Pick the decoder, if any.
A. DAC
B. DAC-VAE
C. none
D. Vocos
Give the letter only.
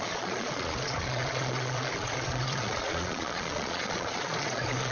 D